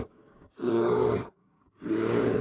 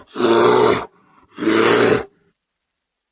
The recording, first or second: second